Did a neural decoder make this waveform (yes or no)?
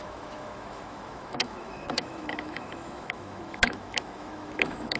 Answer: yes